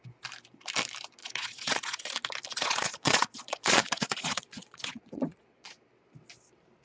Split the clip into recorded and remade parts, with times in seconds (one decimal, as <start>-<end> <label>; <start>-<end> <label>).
0.0-1.2 recorded; 1.2-2.1 remade; 2.1-2.5 recorded; 2.5-5.7 remade; 5.7-6.8 recorded